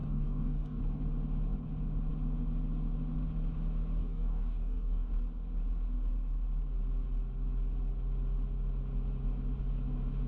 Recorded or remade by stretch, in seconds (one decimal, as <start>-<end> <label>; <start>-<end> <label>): 0.0-0.8 remade; 0.8-4.0 recorded; 4.0-5.1 remade; 5.1-10.3 recorded